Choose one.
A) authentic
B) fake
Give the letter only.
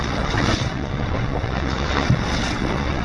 B